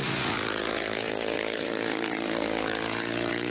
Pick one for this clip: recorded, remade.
remade